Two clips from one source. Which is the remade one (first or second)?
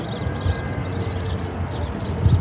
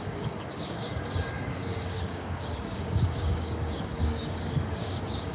second